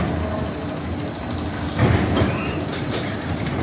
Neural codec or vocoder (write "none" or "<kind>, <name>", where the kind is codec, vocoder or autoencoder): none